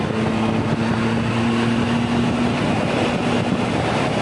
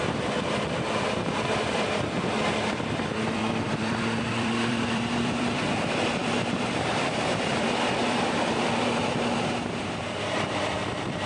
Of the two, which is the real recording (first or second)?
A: first